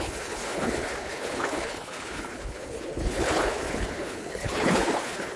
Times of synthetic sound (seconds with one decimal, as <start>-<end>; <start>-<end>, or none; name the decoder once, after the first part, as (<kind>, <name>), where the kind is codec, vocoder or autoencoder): 0.0-5.4 (codec, HILCodec)

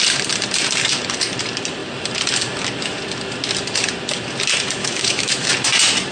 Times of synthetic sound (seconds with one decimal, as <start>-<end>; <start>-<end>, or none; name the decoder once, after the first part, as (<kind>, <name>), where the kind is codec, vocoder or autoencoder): 4.8-5.5 (autoencoder, DAC-VAE)

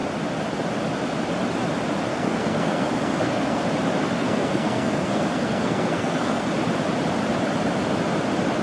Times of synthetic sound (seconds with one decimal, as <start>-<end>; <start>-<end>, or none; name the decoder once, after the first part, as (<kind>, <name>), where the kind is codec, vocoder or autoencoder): 2.1-3.6 (codec, SNAC); 4.2-6.5